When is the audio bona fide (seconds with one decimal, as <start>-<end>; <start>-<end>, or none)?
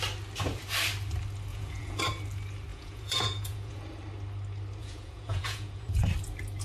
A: 0.0-1.5; 2.0-2.7; 3.8-4.8; 6.0-6.6